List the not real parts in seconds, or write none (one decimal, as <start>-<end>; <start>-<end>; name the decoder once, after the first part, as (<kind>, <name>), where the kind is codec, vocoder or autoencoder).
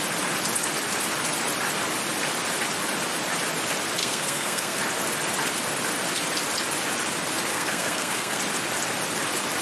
4.0-4.8 (codec, SNAC); 7.5-8.4